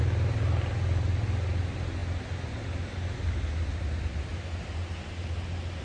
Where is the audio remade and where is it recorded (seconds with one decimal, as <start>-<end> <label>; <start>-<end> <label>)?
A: 0.0-5.8 recorded